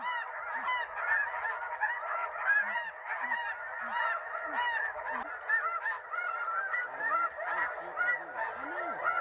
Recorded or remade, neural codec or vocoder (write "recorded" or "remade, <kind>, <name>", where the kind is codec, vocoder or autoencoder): recorded